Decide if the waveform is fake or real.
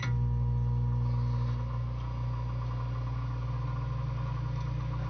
real